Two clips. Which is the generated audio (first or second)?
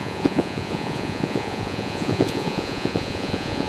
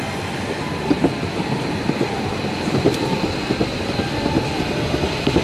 first